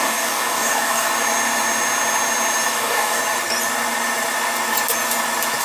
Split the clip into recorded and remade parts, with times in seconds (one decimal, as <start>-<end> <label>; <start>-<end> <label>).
0.0-1.1 remade; 1.1-2.7 recorded; 2.7-3.2 remade; 3.2-5.6 recorded

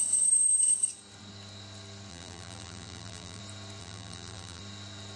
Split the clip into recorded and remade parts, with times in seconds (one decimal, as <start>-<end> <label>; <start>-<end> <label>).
0.0-2.1 recorded; 2.1-3.4 remade; 3.4-3.8 recorded; 3.8-4.6 remade; 4.6-5.2 recorded